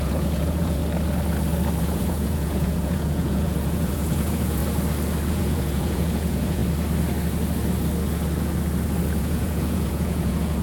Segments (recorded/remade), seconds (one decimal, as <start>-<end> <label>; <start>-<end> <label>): 0.0-0.8 remade; 0.8-1.8 recorded; 1.8-4.6 remade; 4.6-5.3 recorded; 5.3-6.6 remade; 6.6-9.2 recorded; 9.2-10.6 remade